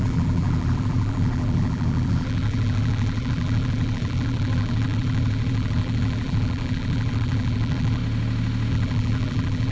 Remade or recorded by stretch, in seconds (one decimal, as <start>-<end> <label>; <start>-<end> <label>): 0.0-8.0 remade; 8.0-8.7 recorded; 8.7-9.7 remade